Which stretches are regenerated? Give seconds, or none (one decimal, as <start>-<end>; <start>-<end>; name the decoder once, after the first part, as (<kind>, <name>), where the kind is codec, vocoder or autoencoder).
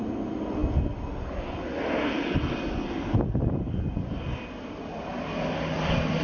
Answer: none